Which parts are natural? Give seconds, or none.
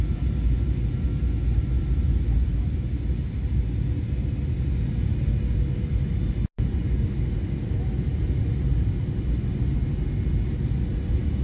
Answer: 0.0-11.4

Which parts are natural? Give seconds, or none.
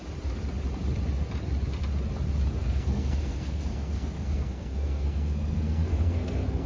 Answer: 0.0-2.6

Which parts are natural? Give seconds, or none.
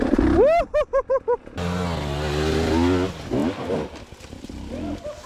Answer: 0.0-5.3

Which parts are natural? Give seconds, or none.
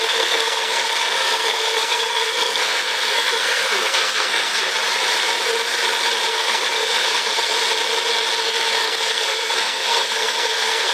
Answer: 4.6-6.3; 7.5-8.4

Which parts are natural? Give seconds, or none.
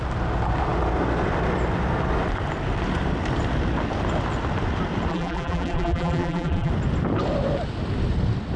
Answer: 0.0-5.1; 6.7-8.6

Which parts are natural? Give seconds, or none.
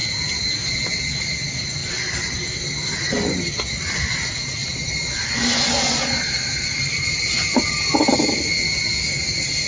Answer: 0.0-9.7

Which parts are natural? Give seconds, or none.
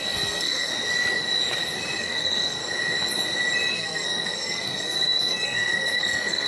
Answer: 0.7-2.0; 2.6-3.7